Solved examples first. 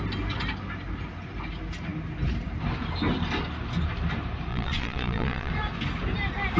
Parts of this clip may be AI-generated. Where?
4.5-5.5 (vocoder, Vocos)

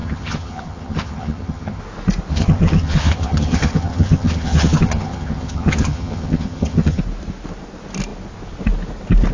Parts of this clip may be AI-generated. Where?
0.0-1.8 (vocoder, HiFi-GAN); 2.3-7.0

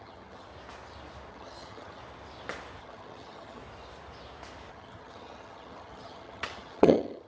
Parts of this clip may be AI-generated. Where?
0.0-0.5 (vocoder, HiFi-GAN); 1.3-2.0; 2.8-3.6; 4.7-7.3

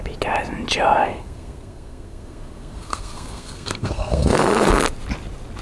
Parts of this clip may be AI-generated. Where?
1.0-4.4 (codec, SNAC)

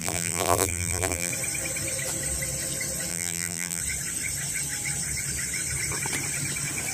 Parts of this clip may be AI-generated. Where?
0.0-1.3 (vocoder, BigVGAN v2); 3.1-3.8

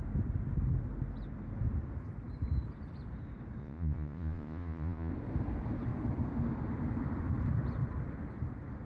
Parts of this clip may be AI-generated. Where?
3.6-5.1 (vocoder, Vocos)

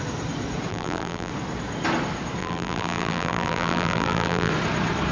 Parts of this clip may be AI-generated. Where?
0.7-1.3 (vocoder, BigVGAN v2); 2.4-4.5